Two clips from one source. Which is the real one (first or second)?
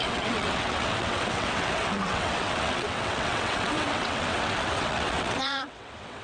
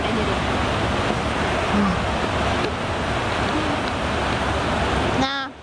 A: second